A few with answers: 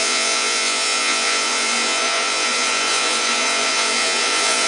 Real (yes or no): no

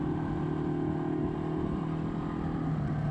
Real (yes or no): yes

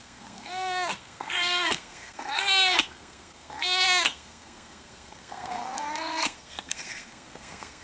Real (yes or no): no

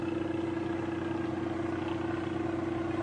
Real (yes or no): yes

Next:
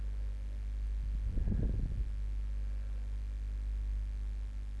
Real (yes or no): yes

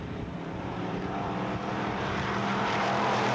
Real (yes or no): no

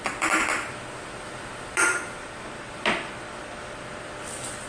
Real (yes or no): yes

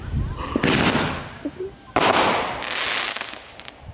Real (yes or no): yes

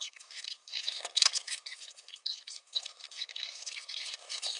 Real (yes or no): no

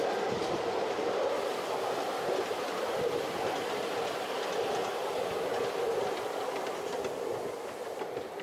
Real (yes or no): yes